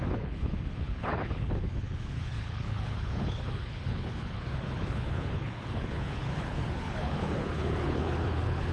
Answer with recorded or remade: remade